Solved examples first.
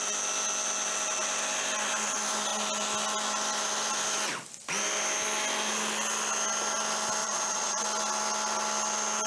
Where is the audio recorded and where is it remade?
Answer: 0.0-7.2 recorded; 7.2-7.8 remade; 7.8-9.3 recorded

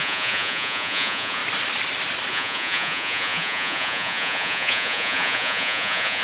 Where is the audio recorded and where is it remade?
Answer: 0.0-1.4 remade; 1.4-2.3 recorded; 2.3-6.2 remade

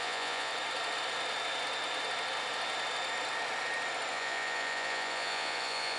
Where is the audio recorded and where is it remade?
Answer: 0.0-0.5 remade; 0.5-4.1 recorded; 4.1-6.0 remade

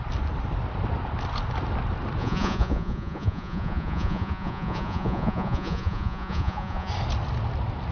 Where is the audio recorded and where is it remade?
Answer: 0.0-2.2 recorded; 2.2-6.9 remade; 6.9-7.9 recorded

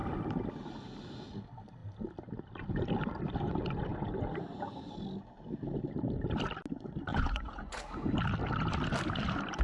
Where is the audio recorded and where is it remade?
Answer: 0.0-7.1 recorded; 7.1-7.8 remade; 7.8-9.6 recorded

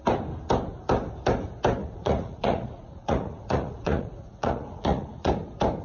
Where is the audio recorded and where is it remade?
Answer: 0.0-1.8 recorded; 1.8-5.3 remade; 5.3-5.8 recorded

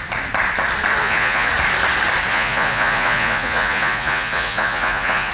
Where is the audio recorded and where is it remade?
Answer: 0.0-1.0 recorded; 1.0-1.5 remade; 1.5-2.3 recorded; 2.3-5.3 remade

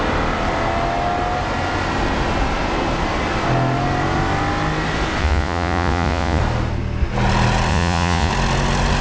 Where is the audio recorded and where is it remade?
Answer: 0.0-5.2 recorded; 5.2-6.4 remade; 6.4-7.7 recorded; 7.7-8.3 remade; 8.3-9.0 recorded